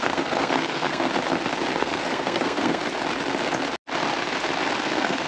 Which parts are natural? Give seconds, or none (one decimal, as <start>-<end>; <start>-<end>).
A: 1.1-1.8; 2.8-4.8